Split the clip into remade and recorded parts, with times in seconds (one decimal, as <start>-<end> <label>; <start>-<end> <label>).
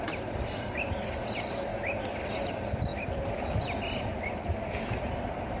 0.0-5.6 recorded